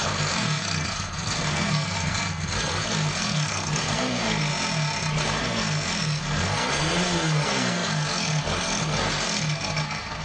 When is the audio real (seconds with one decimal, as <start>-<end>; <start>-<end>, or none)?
4.5-5.2